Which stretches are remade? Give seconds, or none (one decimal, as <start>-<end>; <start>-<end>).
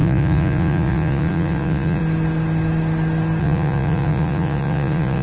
0.0-2.0; 3.4-5.2